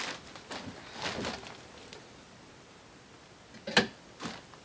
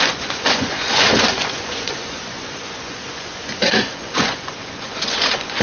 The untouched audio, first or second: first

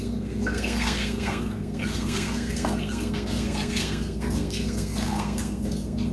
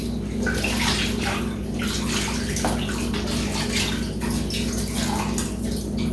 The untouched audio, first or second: second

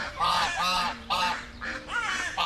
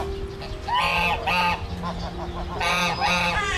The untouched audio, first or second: second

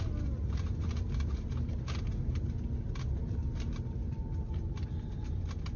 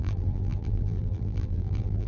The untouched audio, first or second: first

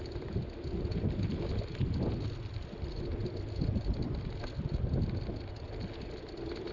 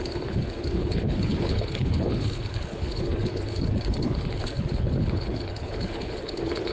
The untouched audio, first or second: first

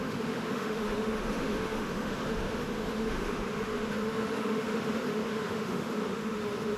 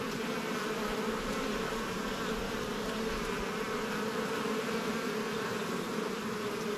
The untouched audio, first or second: second